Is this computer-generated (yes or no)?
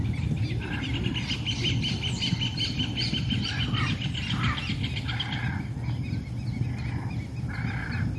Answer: no